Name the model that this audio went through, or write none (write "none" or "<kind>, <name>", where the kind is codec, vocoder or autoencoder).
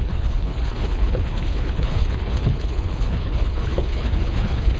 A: codec, HILCodec